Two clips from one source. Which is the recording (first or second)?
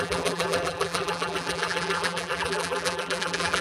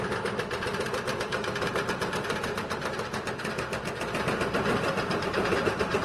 second